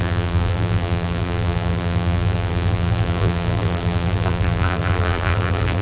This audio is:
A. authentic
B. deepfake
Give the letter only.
B